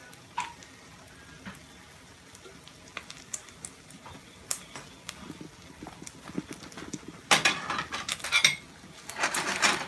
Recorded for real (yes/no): yes